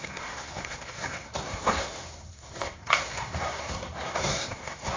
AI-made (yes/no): yes